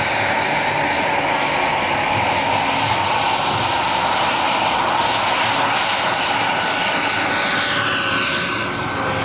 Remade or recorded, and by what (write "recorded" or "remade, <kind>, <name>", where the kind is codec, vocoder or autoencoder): recorded